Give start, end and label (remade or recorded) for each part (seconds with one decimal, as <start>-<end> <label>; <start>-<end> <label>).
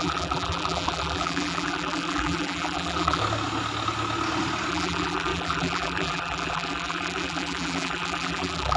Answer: 0.0-3.2 remade; 3.2-4.7 recorded; 4.7-8.8 remade